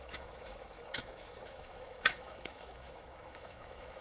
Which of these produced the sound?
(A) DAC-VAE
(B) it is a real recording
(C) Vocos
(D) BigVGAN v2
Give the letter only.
A